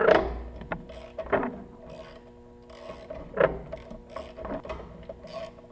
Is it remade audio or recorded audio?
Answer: recorded